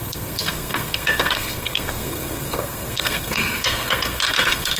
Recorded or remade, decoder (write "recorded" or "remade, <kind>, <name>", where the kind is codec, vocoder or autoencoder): remade, codec, SNAC